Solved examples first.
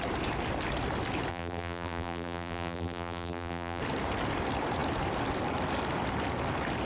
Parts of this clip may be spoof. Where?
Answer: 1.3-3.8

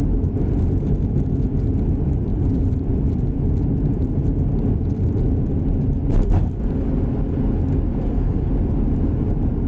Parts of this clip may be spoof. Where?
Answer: 8.0-8.5

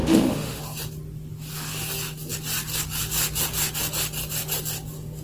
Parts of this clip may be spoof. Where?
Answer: 0.0-0.6

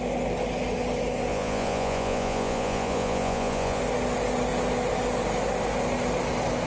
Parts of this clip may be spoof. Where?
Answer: 1.3-3.8

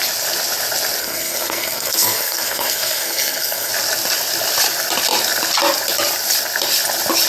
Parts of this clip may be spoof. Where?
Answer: 1.0-3.7

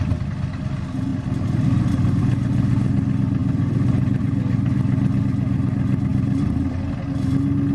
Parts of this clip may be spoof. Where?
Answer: 1.1-2.2; 3.4-5.2; 6.1-7.0